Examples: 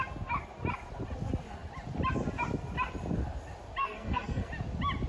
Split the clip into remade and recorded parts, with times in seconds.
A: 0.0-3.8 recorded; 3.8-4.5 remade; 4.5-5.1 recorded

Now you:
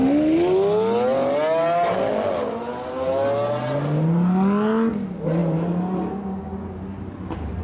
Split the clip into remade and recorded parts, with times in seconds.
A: 0.0-7.6 recorded

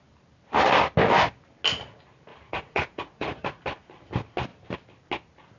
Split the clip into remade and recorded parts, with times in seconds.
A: 0.0-2.3 recorded; 2.3-3.6 remade; 3.6-5.6 recorded

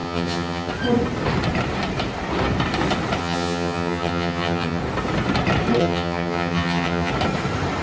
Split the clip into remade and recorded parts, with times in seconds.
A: 0.0-0.7 remade; 0.7-3.2 recorded; 3.2-4.8 remade; 4.8-5.8 recorded; 5.8-7.1 remade; 7.1-7.8 recorded

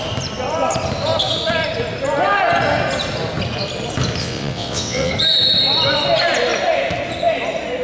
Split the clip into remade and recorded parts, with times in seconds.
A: 0.0-4.2 recorded; 4.2-5.1 remade; 5.1-7.8 recorded

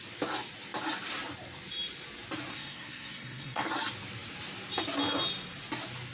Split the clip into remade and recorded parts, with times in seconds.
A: 0.0-2.5 recorded; 2.5-3.7 remade; 3.7-6.1 recorded

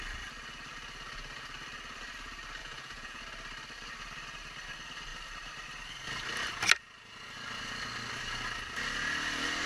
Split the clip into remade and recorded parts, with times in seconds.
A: 0.0-2.6 recorded; 2.6-3.2 remade; 3.2-9.7 recorded

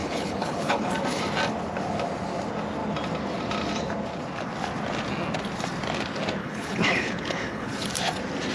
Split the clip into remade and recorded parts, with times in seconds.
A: 0.0-0.9 remade; 0.9-6.4 recorded; 6.4-7.9 remade; 7.9-8.5 recorded